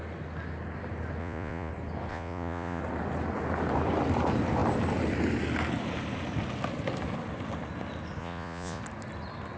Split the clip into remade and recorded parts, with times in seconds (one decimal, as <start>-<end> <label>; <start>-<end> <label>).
0.0-1.2 recorded; 1.2-1.7 remade; 1.7-2.1 recorded; 2.1-2.8 remade; 2.8-8.2 recorded; 8.2-8.8 remade; 8.8-9.6 recorded